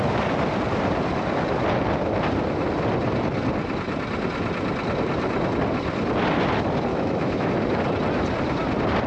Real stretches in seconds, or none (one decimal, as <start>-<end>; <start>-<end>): 0.0-6.9; 7.5-9.1